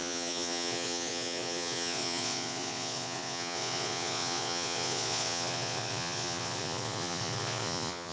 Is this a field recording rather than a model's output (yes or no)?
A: no